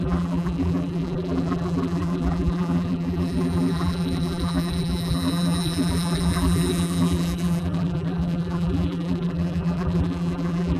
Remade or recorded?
remade